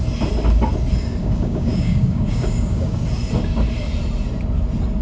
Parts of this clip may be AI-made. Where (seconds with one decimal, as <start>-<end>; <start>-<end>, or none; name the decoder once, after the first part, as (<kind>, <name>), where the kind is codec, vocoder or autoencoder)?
1.2-3.0 (codec, DAC)